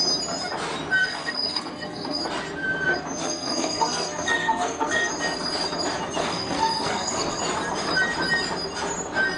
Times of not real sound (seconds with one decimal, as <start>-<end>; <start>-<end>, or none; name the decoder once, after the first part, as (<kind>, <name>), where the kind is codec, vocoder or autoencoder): 1.0-2.2 (codec, SNAC); 3.2-5.1; 6.2-7.4